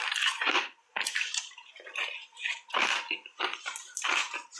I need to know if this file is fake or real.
fake